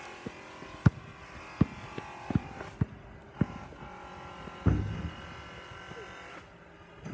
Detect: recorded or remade recorded